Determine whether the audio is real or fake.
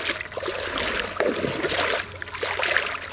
real